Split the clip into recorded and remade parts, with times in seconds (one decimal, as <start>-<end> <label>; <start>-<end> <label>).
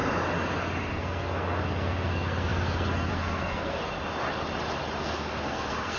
0.0-0.9 recorded; 0.9-3.8 remade; 3.8-5.0 recorded; 5.0-6.0 remade